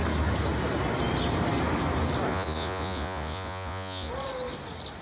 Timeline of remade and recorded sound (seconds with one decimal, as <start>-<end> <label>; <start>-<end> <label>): 0.0-2.3 recorded; 2.3-4.1 remade; 4.1-5.0 recorded